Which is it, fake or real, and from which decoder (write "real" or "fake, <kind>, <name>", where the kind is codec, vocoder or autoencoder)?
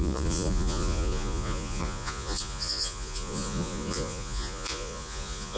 fake, vocoder, Vocos